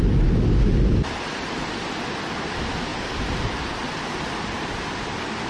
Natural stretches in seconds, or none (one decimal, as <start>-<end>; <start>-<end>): 0.0-5.5